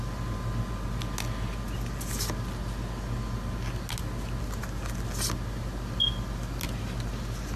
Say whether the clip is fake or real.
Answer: real